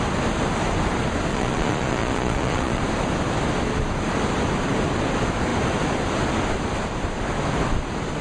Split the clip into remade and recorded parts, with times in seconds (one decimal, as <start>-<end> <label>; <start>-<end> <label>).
0.0-1.3 recorded; 1.3-2.8 remade; 2.8-8.2 recorded